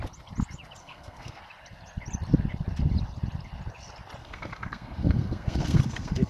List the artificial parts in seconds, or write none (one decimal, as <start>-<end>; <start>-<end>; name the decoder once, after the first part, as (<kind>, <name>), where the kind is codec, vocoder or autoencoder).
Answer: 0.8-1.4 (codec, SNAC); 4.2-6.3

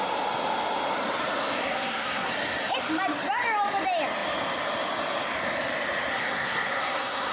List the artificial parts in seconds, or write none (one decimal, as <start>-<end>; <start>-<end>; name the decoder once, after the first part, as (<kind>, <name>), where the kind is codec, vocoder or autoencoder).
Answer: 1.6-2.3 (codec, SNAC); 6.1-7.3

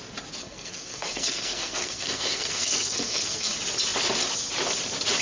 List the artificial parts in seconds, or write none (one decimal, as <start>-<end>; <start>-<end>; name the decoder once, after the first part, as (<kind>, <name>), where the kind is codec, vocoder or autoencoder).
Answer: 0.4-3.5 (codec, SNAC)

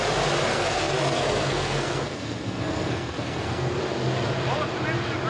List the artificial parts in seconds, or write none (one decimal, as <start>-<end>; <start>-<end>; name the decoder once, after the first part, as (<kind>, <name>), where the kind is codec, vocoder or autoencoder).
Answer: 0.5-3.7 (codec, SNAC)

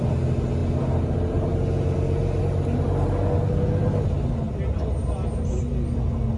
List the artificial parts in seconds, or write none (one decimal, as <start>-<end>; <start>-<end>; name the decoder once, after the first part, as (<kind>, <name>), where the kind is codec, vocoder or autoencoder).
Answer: none

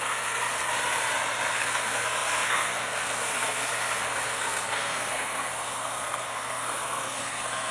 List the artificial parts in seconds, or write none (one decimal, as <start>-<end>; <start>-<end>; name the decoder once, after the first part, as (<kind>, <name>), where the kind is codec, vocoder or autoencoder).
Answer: 0.0-0.6 (codec, SNAC); 1.5-7.7

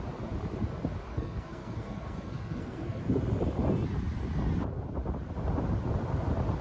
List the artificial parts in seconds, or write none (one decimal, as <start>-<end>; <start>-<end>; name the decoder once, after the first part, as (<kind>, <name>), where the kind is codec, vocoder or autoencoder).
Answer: 1.1-3.0 (codec, SNAC)

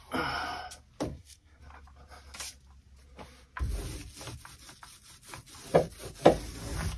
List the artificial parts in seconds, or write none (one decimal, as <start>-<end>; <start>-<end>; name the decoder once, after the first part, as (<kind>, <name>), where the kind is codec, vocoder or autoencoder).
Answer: 1.1-1.6 (codec, SNAC)